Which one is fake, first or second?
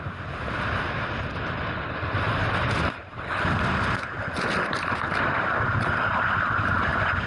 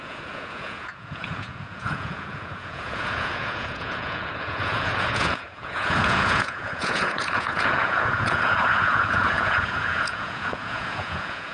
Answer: second